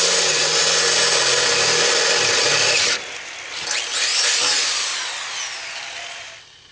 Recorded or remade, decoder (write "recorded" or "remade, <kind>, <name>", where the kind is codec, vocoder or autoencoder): recorded